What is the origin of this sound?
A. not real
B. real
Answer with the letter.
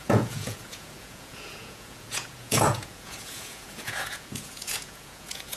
A